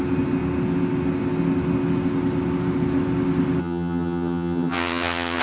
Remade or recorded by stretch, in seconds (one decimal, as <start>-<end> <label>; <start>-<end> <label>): 0.0-3.6 recorded; 3.6-5.4 remade